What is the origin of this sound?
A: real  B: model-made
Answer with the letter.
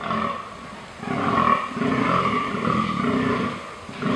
A